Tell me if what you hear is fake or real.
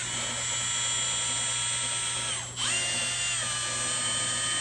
real